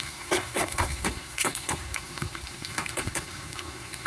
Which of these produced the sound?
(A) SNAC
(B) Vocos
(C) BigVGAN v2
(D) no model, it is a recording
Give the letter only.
A